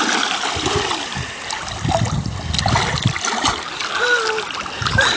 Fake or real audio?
real